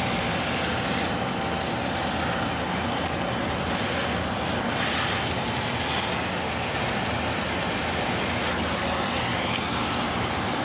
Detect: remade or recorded recorded